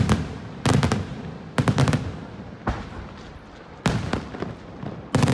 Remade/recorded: recorded